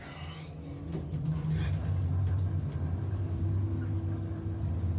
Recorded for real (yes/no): yes